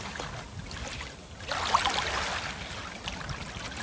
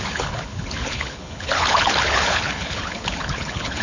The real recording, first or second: first